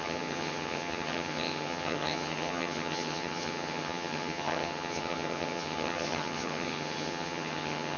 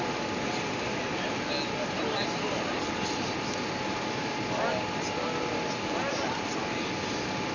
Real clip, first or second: second